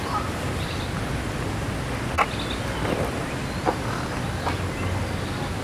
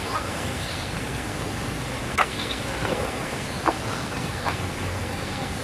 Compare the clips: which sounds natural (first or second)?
first